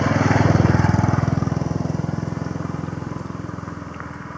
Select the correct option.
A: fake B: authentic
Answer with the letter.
B